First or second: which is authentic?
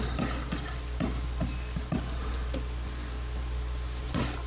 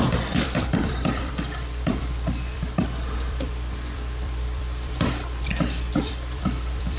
first